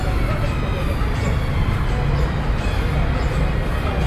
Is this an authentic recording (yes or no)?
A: yes